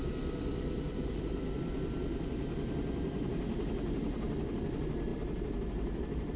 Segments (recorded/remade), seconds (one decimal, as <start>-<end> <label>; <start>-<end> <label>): 0.0-5.1 recorded; 5.1-6.4 remade